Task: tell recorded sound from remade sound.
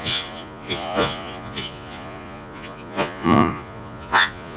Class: remade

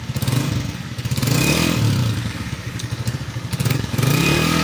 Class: remade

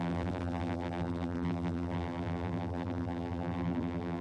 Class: remade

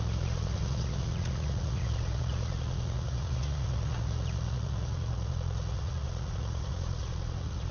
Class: remade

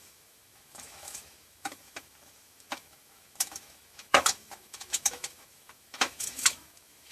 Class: remade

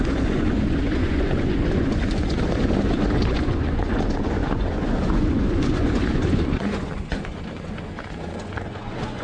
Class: remade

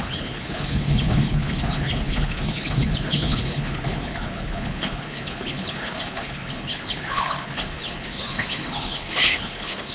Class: remade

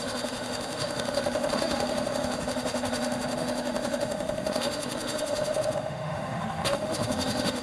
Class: remade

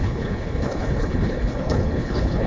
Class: remade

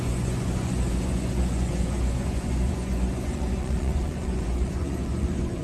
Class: remade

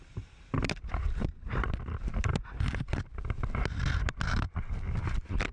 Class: recorded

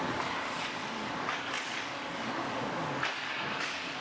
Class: remade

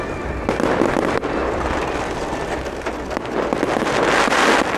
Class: recorded